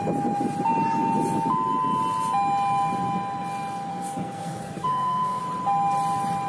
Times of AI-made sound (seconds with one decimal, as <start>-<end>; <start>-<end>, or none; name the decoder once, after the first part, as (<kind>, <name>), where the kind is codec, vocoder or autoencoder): 3.9-5.4 (codec, SNAC)